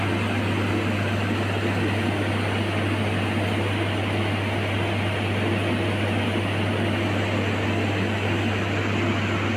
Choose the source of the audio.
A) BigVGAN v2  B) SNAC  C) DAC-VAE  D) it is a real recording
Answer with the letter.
D